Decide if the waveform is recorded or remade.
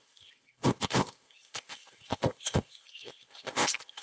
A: remade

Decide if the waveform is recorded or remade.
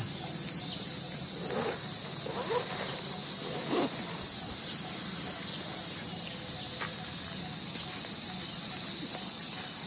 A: recorded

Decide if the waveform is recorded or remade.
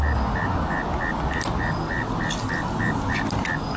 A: recorded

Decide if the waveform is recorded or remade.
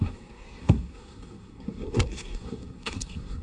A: remade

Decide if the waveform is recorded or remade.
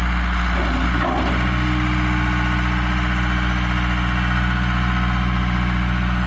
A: recorded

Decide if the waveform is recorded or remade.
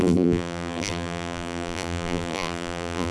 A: remade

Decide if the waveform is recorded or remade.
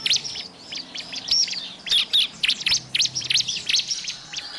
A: remade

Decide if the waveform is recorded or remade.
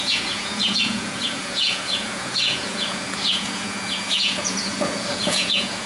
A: remade